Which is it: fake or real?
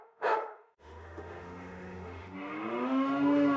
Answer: fake